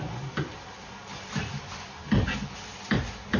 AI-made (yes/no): no